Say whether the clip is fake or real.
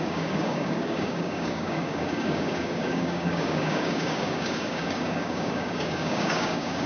fake